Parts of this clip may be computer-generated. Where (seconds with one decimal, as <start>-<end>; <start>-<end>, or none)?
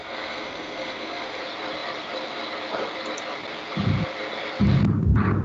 0.0-1.4